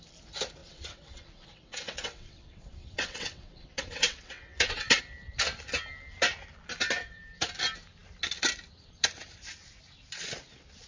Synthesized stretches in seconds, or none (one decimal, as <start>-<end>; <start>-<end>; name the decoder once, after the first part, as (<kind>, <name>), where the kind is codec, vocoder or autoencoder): 0.6-5.0 (vocoder, WaveNeXt)